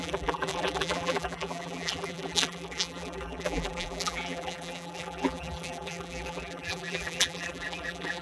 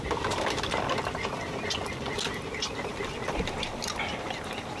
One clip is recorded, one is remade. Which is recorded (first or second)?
second